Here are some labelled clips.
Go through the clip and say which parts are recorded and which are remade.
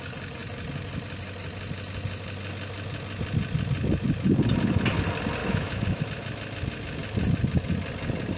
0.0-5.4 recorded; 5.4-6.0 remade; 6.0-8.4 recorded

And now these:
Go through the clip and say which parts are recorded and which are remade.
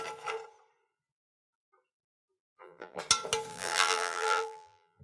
0.0-2.0 recorded; 2.0-3.0 remade; 3.0-3.5 recorded; 3.5-5.0 remade